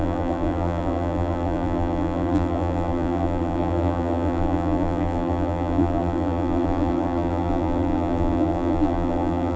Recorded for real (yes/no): no